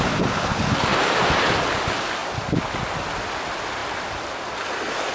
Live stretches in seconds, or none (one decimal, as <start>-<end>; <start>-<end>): 0.0-5.1